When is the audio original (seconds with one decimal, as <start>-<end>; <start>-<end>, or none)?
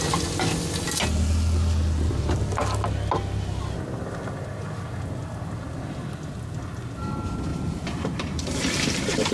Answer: 0.0-7.5